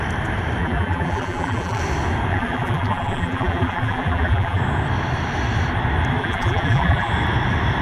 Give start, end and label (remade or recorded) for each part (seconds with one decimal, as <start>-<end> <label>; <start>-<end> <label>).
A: 0.0-0.6 recorded; 0.6-1.8 remade; 1.8-2.3 recorded; 2.3-4.6 remade; 4.6-6.2 recorded; 6.2-7.1 remade; 7.1-7.8 recorded